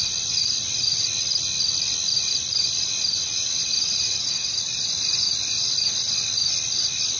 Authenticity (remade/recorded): recorded